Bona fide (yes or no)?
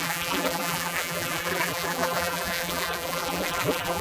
no